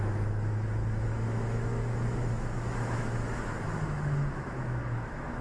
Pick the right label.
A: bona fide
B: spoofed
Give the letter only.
B